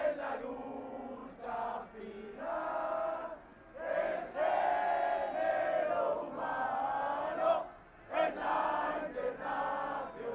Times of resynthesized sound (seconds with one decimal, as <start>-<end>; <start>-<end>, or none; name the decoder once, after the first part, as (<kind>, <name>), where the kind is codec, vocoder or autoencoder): none